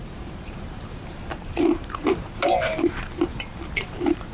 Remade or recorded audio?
remade